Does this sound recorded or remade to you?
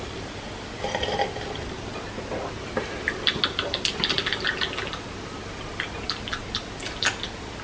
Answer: recorded